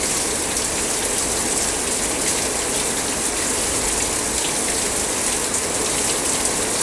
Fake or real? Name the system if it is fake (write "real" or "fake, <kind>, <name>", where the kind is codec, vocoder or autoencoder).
real